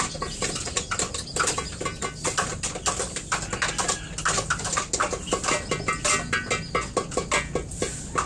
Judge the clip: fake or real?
real